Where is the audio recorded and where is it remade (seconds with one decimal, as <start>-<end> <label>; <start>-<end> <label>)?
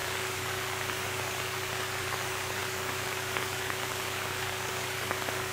0.0-5.5 remade